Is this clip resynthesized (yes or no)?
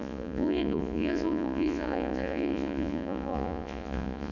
yes